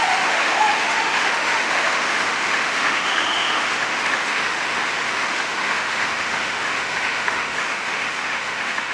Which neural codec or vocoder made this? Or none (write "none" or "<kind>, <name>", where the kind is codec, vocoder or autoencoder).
autoencoder, DAC-VAE